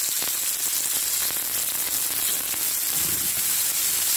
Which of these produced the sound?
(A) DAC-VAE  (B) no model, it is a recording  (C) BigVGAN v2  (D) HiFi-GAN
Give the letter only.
B